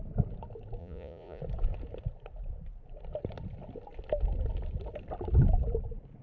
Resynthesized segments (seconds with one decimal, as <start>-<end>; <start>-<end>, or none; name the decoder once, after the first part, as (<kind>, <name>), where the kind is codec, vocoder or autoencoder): 0.8-1.4 (vocoder, Vocos)